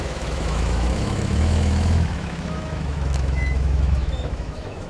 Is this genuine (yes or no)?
no